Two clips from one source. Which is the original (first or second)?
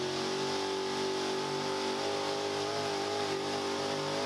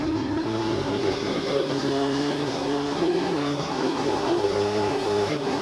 first